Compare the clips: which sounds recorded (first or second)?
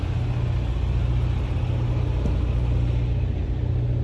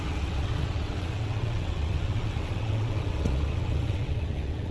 first